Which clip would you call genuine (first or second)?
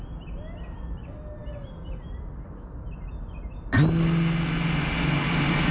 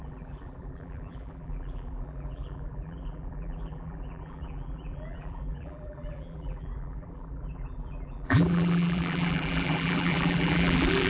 first